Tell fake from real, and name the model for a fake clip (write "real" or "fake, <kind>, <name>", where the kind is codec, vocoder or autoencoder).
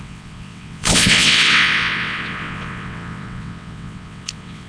fake, vocoder, WaveNeXt